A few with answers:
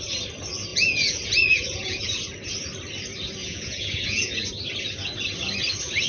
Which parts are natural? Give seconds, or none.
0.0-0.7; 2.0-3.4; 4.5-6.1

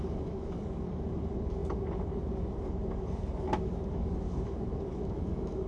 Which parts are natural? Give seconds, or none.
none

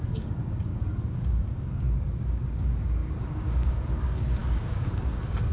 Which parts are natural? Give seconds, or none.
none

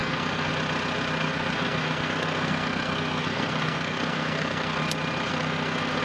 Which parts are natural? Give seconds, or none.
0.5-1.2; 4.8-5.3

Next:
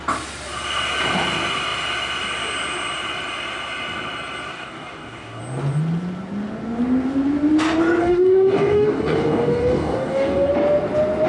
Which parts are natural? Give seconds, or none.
0.0-4.5; 5.4-8.0; 10.5-11.3